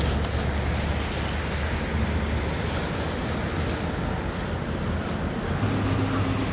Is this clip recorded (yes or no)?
yes